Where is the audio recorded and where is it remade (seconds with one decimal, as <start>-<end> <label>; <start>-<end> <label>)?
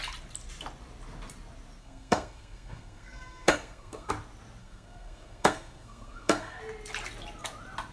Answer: 0.0-1.8 recorded; 1.8-4.1 remade; 4.1-4.6 recorded; 4.6-6.6 remade; 6.6-7.9 recorded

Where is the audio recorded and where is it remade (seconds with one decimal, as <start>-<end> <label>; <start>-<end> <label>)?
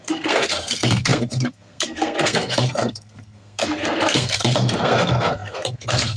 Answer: 0.0-6.2 remade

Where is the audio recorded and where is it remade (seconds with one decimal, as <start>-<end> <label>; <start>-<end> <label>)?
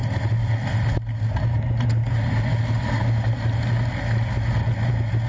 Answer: 0.0-5.3 recorded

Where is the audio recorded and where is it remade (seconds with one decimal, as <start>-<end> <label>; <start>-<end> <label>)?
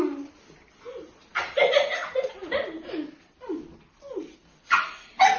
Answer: 0.0-5.4 recorded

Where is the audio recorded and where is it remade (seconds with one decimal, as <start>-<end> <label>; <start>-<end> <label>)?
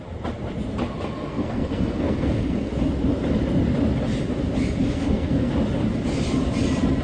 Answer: 0.0-1.3 recorded; 1.3-2.7 remade; 2.7-4.8 recorded; 4.8-5.5 remade; 5.5-7.0 recorded